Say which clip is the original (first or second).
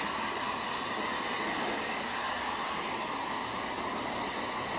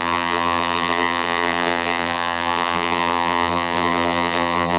first